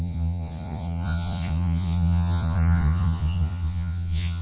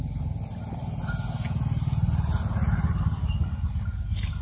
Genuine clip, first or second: second